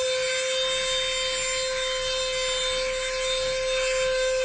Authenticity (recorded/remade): recorded